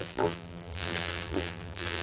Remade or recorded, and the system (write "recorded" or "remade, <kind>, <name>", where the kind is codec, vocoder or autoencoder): remade, vocoder, BigVGAN v2